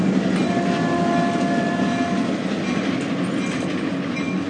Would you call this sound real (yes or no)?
yes